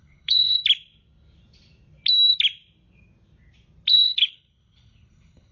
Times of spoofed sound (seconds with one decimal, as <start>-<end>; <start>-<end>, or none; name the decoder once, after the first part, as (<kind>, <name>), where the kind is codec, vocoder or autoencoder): 0.0-0.6 (codec, HILCodec); 3.9-5.5